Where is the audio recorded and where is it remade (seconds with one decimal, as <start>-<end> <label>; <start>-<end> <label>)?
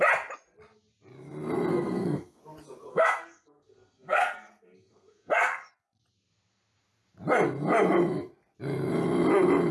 0.0-1.7 recorded; 1.7-2.4 remade; 2.4-2.9 recorded; 2.9-5.7 remade; 5.7-9.7 recorded